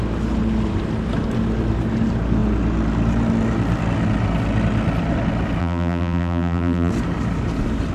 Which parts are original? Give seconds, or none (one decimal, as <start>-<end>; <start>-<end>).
0.0-5.6; 6.9-7.9